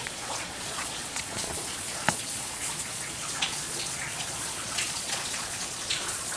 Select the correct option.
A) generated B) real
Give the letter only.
A